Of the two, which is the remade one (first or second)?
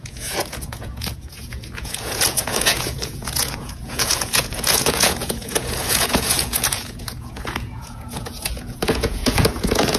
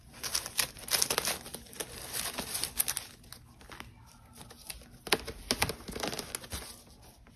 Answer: first